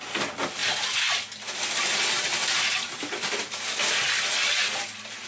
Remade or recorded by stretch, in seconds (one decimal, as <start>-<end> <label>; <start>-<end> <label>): 0.0-5.3 recorded